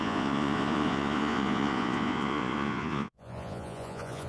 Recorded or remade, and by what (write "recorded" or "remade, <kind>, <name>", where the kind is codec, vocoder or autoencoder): remade, vocoder, Vocos